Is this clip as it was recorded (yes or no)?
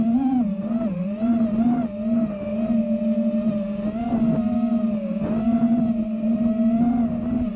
yes